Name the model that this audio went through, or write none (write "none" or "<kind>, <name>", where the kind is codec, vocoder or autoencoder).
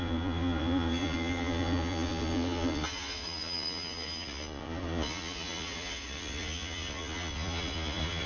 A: vocoder, Vocos